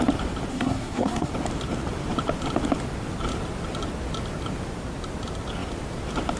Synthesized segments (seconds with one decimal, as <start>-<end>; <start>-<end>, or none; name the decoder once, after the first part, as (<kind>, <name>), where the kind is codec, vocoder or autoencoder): 0.5-1.3 (codec, SNAC)